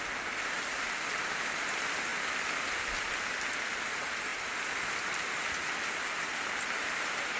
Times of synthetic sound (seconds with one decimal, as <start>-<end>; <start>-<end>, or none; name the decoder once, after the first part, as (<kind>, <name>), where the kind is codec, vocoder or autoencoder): none